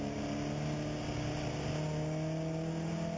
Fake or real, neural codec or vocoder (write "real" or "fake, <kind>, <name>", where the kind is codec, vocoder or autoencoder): real